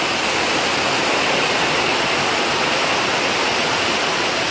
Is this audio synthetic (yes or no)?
no